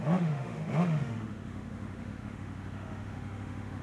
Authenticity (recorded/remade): remade